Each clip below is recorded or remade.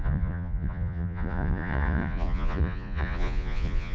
remade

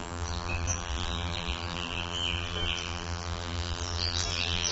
remade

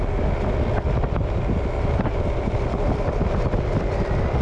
recorded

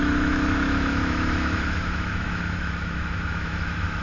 remade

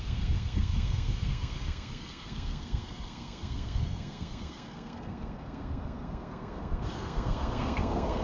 remade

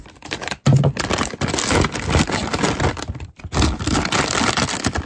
recorded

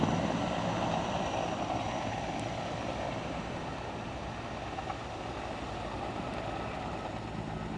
recorded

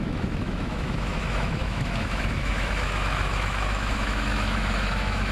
remade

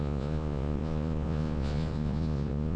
remade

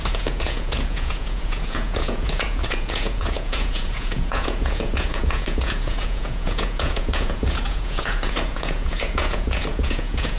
remade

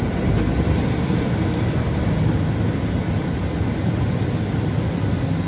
recorded